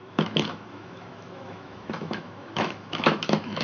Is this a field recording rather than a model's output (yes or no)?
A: no